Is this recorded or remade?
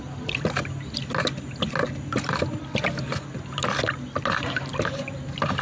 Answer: recorded